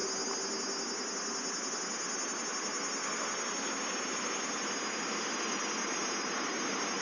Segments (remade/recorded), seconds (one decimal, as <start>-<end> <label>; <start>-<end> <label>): 0.0-7.0 recorded